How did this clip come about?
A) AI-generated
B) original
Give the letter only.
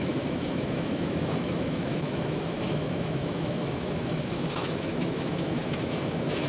A